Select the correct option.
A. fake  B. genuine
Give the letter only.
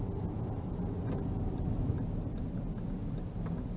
B